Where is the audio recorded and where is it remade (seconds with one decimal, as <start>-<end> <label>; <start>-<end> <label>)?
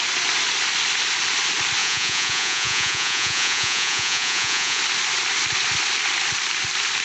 0.0-1.8 recorded; 1.8-4.8 remade; 4.8-7.0 recorded